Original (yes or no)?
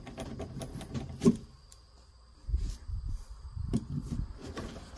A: no